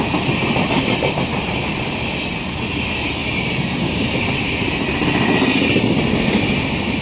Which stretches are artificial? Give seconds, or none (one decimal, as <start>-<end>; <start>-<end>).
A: 3.2-3.8